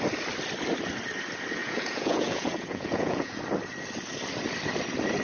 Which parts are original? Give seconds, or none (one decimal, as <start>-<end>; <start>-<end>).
0.0-1.6; 3.4-5.2